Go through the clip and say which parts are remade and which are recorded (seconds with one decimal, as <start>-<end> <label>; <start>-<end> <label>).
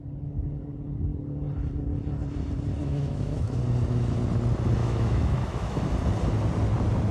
0.0-2.8 recorded; 2.8-3.6 remade; 3.6-4.8 recorded; 4.8-5.9 remade; 5.9-7.1 recorded